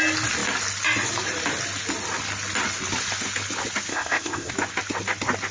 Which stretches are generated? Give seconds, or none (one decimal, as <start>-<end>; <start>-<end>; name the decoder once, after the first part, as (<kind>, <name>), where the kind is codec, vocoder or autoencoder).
3.9-4.5 (codec, ZipCodec)